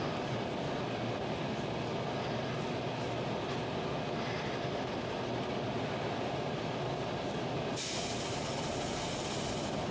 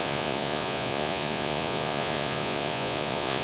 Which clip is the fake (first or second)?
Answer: second